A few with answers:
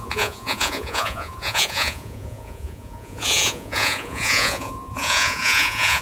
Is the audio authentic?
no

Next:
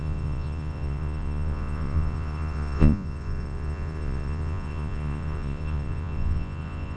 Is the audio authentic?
no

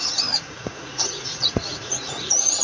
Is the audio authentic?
no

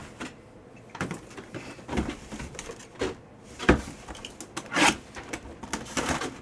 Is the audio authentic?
yes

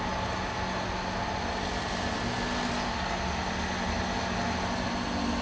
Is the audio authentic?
yes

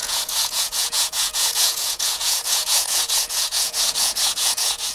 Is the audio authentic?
no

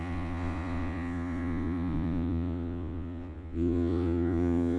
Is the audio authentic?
no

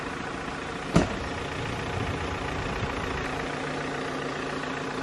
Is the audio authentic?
yes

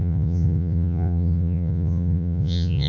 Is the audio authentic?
no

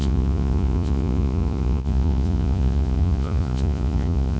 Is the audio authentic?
no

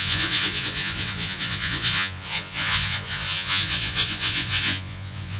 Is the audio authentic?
no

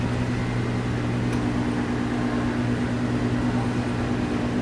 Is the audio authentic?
yes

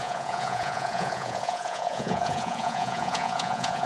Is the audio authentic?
no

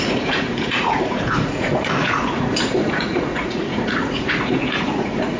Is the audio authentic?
no